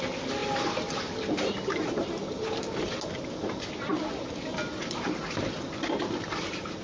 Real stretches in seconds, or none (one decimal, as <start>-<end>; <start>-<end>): 0.0-6.8